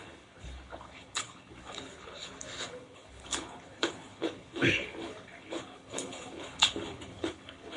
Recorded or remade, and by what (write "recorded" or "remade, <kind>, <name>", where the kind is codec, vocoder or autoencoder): remade, codec, HILCodec